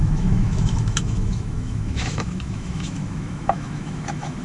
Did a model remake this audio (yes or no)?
yes